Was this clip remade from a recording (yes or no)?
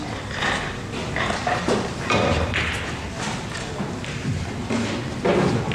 no